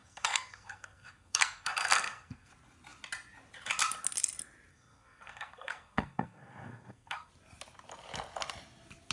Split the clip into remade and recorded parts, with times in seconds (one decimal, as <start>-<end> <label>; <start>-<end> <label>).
0.0-2.5 remade; 2.5-4.7 recorded; 4.7-7.3 remade; 7.3-9.1 recorded

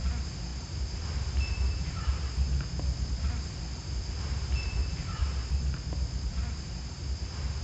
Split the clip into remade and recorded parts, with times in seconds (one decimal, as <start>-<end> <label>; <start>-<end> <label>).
0.0-0.5 recorded; 0.5-4.8 remade; 4.8-5.2 recorded; 5.2-7.6 remade

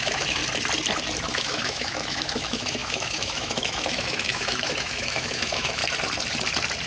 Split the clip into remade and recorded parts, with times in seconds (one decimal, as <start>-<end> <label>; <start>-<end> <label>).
0.0-0.4 remade; 0.4-1.3 recorded; 1.3-5.8 remade; 5.8-6.9 recorded

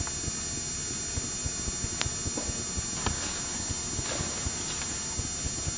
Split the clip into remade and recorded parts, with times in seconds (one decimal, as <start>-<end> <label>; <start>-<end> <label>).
0.0-5.8 recorded

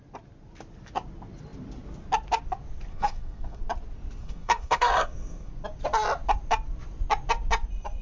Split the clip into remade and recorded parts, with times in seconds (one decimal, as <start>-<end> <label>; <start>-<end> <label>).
0.0-2.9 recorded; 2.9-3.6 remade; 3.6-4.2 recorded; 4.2-5.5 remade; 5.5-8.0 recorded

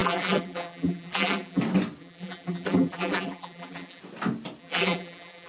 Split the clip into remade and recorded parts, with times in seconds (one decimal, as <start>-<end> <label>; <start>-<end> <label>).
0.0-1.6 remade; 1.6-2.0 recorded; 2.0-4.0 remade; 4.0-4.6 recorded; 4.6-5.5 remade